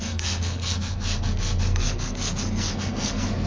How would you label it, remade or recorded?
remade